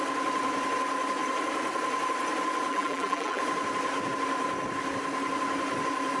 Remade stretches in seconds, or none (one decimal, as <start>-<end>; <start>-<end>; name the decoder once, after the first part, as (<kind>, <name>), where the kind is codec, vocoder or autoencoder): 2.7-3.4 (vocoder, BigVGAN v2)